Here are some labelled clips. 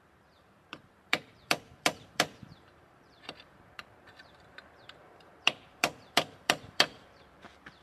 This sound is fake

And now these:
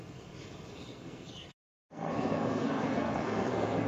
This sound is fake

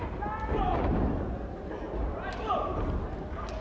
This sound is real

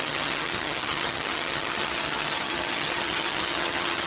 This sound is fake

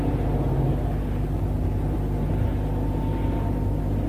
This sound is real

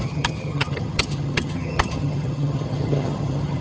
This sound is fake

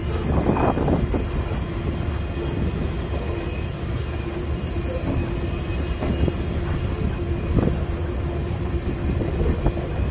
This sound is real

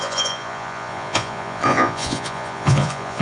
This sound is fake